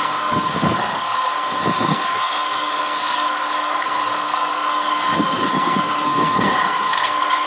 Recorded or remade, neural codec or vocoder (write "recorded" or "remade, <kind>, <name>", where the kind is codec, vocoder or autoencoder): remade, codec, SNAC